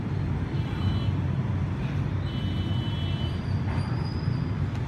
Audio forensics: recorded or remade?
recorded